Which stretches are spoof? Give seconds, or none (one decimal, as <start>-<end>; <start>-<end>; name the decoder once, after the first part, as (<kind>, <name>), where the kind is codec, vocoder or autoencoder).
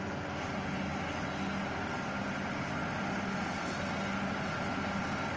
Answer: none